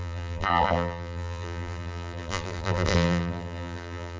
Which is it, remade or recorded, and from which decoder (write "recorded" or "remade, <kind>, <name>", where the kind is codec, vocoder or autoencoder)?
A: remade, vocoder, BigVGAN v2